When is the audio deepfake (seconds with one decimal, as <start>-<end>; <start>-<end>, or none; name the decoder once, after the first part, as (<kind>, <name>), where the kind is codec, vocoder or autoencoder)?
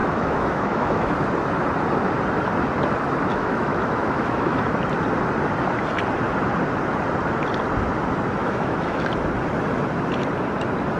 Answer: 0.0-1.1 (autoencoder, DAC-VAE); 3.3-4.6; 8.4-9.1